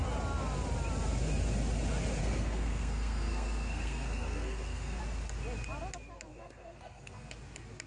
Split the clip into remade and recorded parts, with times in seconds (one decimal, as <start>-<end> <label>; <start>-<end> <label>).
0.0-2.2 recorded; 2.2-5.0 remade; 5.0-6.3 recorded; 6.3-7.3 remade; 7.3-7.9 recorded